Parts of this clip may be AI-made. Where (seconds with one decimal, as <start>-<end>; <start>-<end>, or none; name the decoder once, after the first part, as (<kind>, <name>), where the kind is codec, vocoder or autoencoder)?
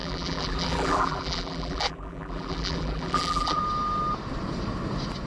0.0-3.6 (vocoder, BigVGAN v2)